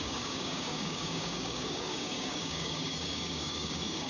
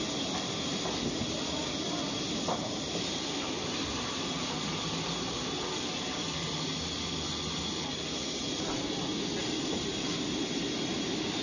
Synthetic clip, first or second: first